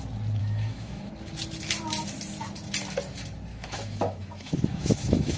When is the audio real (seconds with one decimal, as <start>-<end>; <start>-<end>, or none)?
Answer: 0.0-0.4; 1.1-3.5